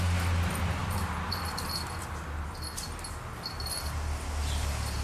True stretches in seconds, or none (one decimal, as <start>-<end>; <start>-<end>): 0.0-5.0